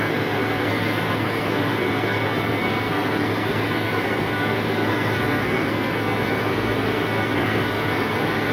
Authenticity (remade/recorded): remade